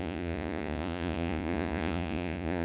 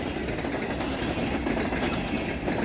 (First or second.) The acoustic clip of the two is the second